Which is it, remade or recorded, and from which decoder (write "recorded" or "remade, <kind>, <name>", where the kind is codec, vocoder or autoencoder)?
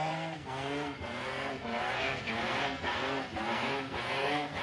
remade, codec, SNAC